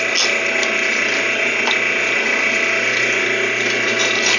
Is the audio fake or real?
real